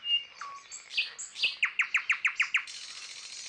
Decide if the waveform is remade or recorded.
recorded